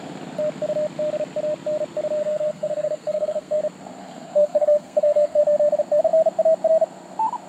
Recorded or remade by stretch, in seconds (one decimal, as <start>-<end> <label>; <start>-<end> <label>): 0.0-2.2 recorded; 2.2-3.6 remade; 3.6-4.0 recorded; 4.0-5.4 remade; 5.4-7.5 recorded